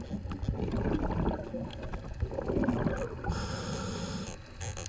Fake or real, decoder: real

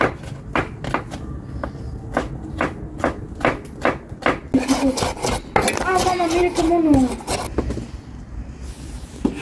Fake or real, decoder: real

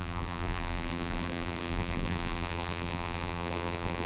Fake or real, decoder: fake, vocoder, BigVGAN v2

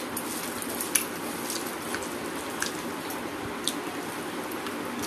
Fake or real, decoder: real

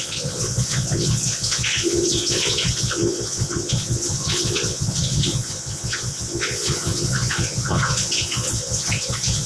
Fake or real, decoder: fake, vocoder, Vocos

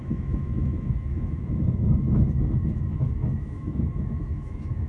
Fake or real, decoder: fake, autoencoder, DAC-VAE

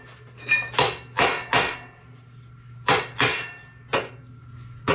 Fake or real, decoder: real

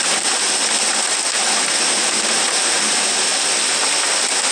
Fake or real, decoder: real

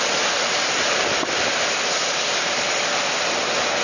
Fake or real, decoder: real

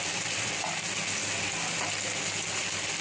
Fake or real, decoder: real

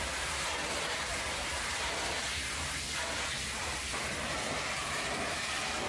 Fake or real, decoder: real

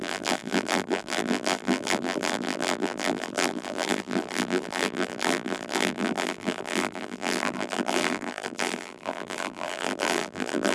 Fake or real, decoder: fake, vocoder, BigVGAN v2